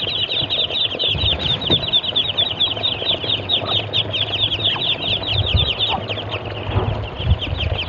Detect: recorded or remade recorded